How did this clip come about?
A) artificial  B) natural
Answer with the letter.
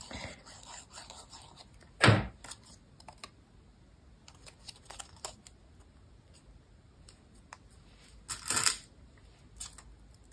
B